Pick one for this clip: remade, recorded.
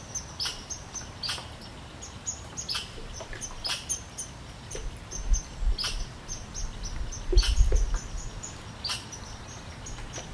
recorded